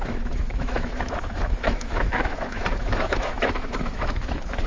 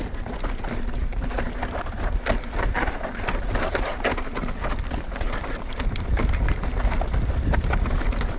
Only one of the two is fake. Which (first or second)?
first